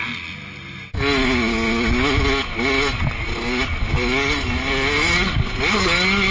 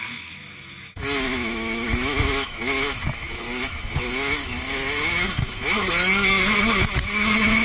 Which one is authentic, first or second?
first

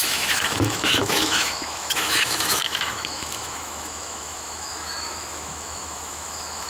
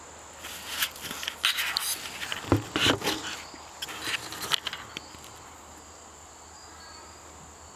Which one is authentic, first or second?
second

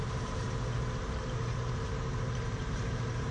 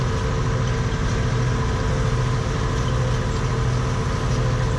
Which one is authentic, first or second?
second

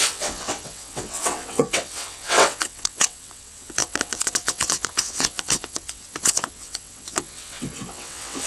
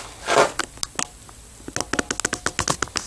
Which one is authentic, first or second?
second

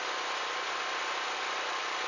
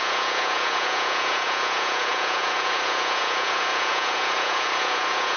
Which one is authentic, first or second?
first